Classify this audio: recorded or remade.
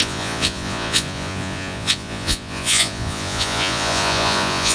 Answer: remade